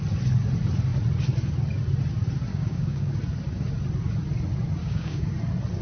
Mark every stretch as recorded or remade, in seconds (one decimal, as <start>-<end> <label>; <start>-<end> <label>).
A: 0.0-2.5 recorded; 2.5-3.1 remade; 3.1-4.8 recorded; 4.8-5.3 remade; 5.3-5.8 recorded